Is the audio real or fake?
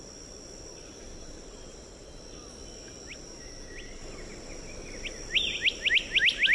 real